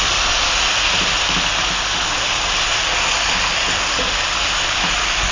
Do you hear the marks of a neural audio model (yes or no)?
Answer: no